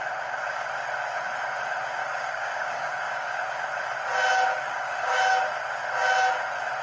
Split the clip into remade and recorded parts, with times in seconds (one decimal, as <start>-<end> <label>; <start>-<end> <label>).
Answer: 0.0-2.0 recorded; 2.0-3.4 remade; 3.4-4.5 recorded; 4.5-5.2 remade; 5.2-6.8 recorded